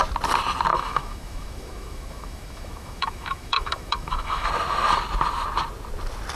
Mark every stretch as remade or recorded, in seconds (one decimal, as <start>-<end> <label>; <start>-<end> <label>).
0.0-0.7 recorded; 0.7-4.5 remade; 4.5-6.4 recorded

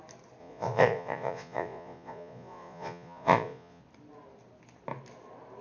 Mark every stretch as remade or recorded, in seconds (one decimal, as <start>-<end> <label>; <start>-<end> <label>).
0.0-0.4 recorded; 0.4-3.8 remade; 3.8-5.6 recorded

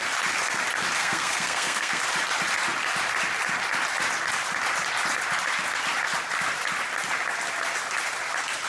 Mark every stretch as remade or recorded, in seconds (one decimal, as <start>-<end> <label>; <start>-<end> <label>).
0.0-1.0 recorded; 1.0-2.0 remade; 2.0-8.7 recorded

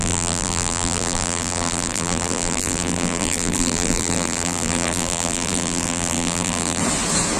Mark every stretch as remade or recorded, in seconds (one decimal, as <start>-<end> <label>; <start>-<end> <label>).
0.0-6.8 remade; 6.8-7.4 recorded

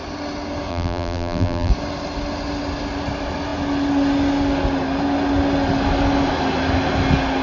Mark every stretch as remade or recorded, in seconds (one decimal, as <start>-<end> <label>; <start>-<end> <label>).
0.0-0.7 recorded; 0.7-1.7 remade; 1.7-7.4 recorded

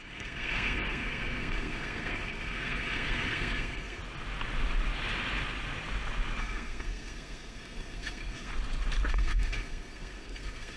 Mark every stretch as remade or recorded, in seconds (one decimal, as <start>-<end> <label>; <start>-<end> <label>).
0.0-4.0 remade; 4.0-6.4 recorded; 6.4-8.5 remade; 8.5-9.1 recorded; 9.1-10.8 remade